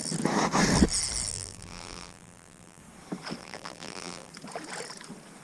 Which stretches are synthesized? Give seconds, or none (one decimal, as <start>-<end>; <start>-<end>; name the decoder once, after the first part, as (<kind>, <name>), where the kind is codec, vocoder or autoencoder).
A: 1.3-2.8 (vocoder, BigVGAN v2); 3.4-4.3

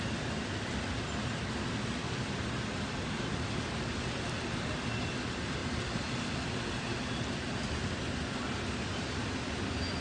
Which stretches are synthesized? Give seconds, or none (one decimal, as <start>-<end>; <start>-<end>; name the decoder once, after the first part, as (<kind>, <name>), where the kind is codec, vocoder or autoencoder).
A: none

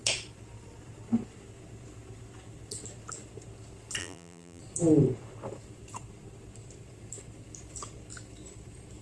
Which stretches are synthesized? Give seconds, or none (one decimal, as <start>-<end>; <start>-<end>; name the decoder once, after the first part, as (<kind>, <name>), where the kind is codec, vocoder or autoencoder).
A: 4.0-4.6 (vocoder, BigVGAN v2)

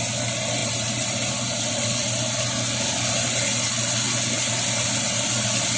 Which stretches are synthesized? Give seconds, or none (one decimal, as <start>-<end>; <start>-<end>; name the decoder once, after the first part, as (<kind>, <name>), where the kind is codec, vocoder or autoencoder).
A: 0.6-1.6 (vocoder, BigVGAN v2)

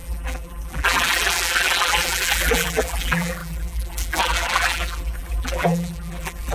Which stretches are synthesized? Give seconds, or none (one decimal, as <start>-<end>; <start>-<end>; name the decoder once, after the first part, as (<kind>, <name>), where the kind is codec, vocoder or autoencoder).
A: 0.0-6.5 (vocoder, BigVGAN v2)